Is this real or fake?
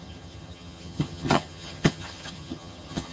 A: fake